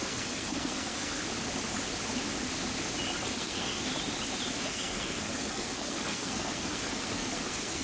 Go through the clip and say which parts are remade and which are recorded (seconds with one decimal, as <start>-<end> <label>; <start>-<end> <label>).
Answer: 0.0-1.2 remade; 1.2-3.2 recorded; 3.2-3.9 remade; 3.9-4.6 recorded; 4.6-7.8 remade